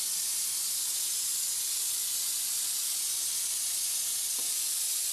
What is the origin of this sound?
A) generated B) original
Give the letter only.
B